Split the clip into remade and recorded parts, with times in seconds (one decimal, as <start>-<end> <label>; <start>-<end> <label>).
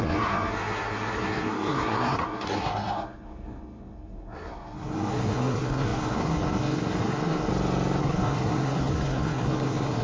0.0-7.5 remade; 7.5-8.0 recorded; 8.0-10.0 remade